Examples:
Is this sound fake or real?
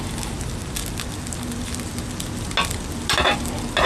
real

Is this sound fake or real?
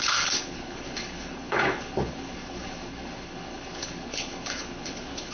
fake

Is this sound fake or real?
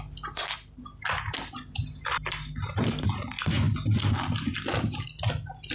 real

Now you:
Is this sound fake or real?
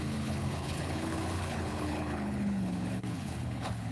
fake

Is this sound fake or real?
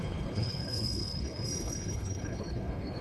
fake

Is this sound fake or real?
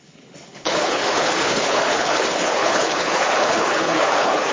fake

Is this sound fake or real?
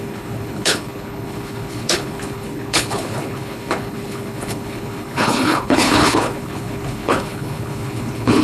fake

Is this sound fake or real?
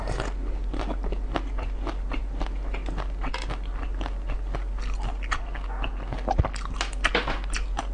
real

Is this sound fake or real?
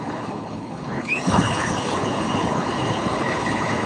fake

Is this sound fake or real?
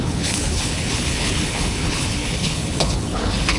fake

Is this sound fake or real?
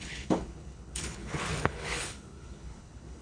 fake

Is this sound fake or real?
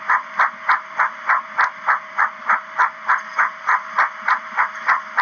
real